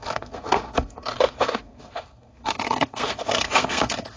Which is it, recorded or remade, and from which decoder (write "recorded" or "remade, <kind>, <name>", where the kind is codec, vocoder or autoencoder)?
remade, codec, SNAC